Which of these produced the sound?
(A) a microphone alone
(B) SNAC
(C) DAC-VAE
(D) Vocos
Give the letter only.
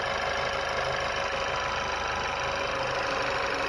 A